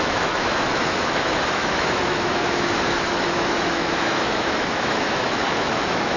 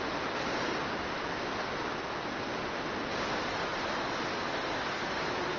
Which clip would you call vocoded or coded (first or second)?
first